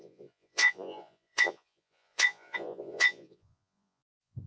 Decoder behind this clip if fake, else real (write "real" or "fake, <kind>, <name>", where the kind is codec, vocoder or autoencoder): fake, vocoder, Vocos